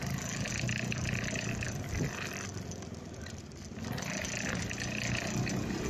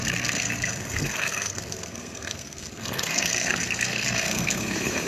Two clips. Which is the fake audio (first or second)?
second